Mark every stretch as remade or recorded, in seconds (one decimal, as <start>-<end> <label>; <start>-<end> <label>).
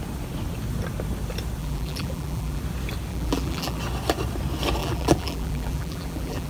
0.0-1.6 recorded; 1.6-2.6 remade; 2.6-3.1 recorded; 3.1-3.8 remade; 3.8-4.8 recorded; 4.8-6.5 remade